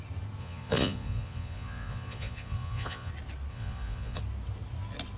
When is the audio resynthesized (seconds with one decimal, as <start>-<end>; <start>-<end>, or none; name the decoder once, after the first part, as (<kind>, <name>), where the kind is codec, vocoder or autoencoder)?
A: 0.4-3.1 (vocoder, Vocos); 3.5-4.2